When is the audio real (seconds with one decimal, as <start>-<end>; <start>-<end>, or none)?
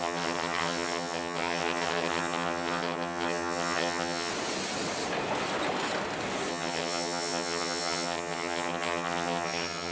4.3-6.5